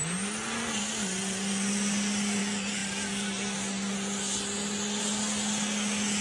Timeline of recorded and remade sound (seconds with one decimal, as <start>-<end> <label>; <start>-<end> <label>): 0.0-6.2 recorded